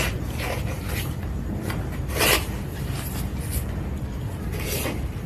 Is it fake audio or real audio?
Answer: real